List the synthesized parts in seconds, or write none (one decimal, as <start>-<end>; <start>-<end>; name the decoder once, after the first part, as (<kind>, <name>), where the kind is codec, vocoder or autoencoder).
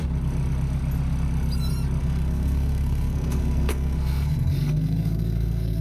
2.0-5.8 (codec, SNAC)